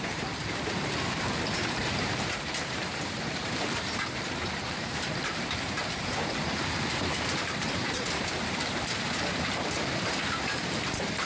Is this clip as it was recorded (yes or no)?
no